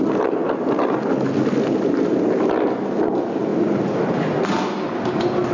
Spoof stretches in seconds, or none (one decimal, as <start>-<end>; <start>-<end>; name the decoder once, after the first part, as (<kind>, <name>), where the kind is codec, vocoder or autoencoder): none